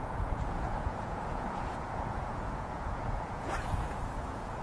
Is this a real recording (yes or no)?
no